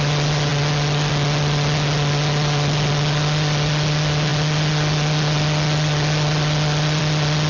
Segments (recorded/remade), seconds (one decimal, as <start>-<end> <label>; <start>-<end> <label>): 0.0-7.5 recorded